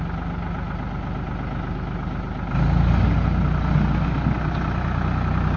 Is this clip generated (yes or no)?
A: no